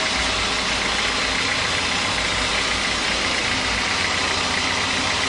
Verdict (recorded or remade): recorded